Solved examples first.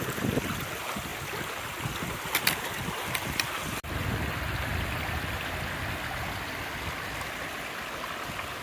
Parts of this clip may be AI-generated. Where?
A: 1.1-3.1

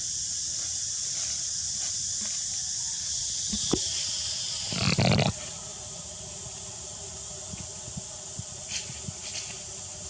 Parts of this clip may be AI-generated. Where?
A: none

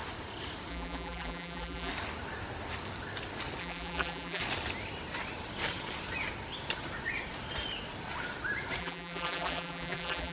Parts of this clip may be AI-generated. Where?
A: 0.7-1.9; 3.6-4.4; 8.8-10.3